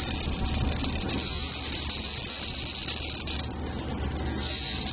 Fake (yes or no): no